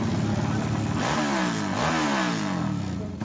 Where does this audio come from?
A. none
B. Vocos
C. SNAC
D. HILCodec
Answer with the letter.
A